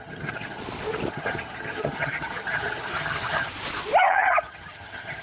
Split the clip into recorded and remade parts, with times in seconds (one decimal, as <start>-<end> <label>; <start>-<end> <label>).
0.0-0.6 remade; 0.6-1.1 recorded; 1.1-3.5 remade; 3.5-4.1 recorded; 4.1-5.2 remade